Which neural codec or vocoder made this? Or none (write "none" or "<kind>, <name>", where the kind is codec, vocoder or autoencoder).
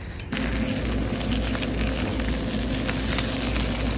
none